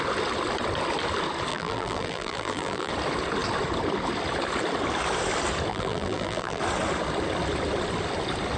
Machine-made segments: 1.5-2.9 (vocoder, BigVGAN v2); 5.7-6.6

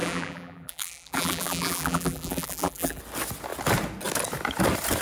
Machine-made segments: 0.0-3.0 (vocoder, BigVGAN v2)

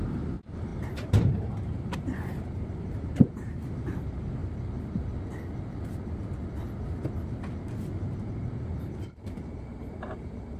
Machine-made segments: 0.0-4.4 (vocoder, BigVGAN v2); 8.0-10.6

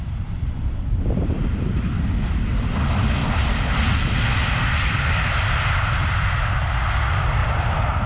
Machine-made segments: 0.0-2.5 (vocoder, BigVGAN v2); 7.4-8.1

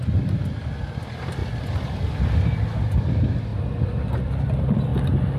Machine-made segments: 0.6-1.4 (vocoder, BigVGAN v2); 2.8-3.5; 4.1-4.9

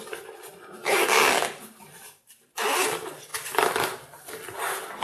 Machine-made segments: none

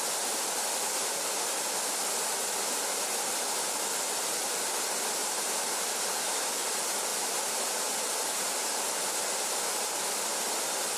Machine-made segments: 5.2-6.0 (vocoder, BigVGAN v2)

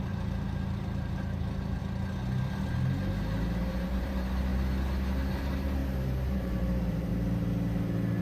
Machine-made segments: 0.0-1.8 (vocoder, BigVGAN v2); 3.7-4.5; 5.3-5.8; 6.3-7.1